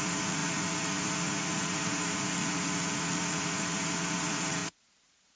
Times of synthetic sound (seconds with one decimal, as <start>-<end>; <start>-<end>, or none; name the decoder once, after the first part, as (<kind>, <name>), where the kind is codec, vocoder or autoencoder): 0.0-5.4 (vocoder, Vocos)